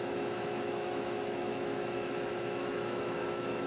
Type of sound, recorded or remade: remade